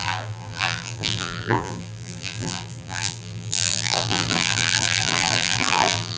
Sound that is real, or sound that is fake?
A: fake